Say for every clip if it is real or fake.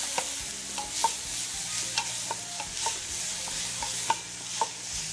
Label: real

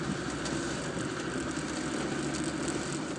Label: real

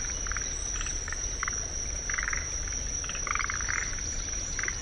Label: real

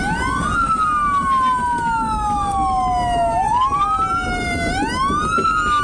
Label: real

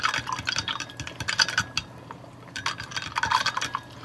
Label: real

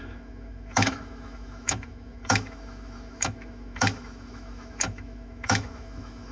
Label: fake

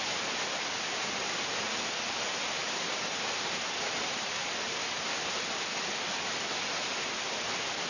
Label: real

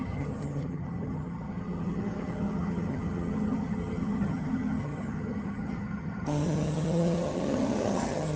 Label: fake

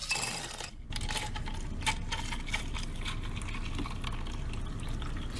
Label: real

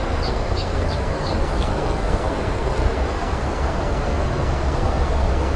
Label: fake